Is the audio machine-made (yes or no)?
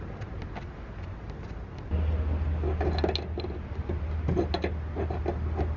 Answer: no